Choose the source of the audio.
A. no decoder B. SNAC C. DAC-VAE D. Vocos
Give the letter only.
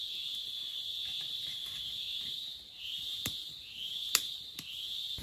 A